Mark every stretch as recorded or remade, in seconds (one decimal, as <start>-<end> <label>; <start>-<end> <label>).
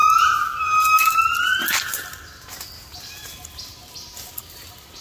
0.0-5.0 recorded